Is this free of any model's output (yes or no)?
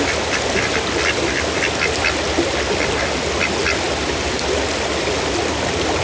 yes